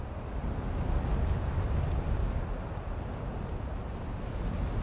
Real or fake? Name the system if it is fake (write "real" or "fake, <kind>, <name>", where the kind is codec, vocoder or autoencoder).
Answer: real